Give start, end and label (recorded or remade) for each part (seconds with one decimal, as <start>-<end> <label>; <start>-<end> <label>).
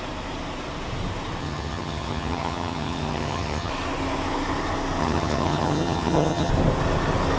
0.0-1.4 recorded; 1.4-3.7 remade; 3.7-5.0 recorded; 5.0-6.5 remade; 6.5-7.4 recorded